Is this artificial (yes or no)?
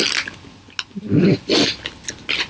no